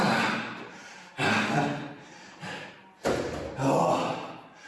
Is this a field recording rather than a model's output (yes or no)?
yes